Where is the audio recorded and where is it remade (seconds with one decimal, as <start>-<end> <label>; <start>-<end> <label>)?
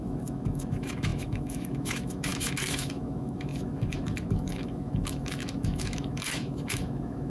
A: 0.0-7.3 remade